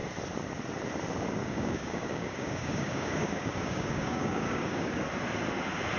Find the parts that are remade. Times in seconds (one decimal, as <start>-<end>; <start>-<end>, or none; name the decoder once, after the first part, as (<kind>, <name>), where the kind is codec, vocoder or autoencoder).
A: 1.4-5.0 (codec, DAC)